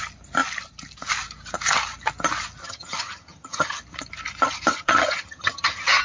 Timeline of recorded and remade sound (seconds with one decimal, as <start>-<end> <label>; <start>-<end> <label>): 0.0-2.6 recorded; 2.6-3.8 remade; 3.8-4.7 recorded; 4.7-6.0 remade